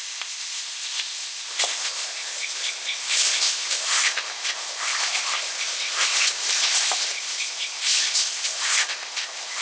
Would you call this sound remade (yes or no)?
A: yes